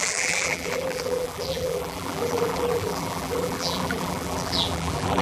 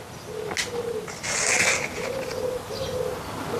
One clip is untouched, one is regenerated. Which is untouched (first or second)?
second